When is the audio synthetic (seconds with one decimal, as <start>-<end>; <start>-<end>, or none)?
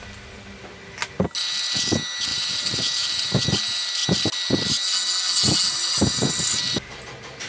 2.3-3.4